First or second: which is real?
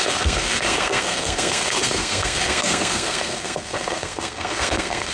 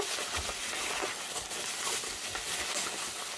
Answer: second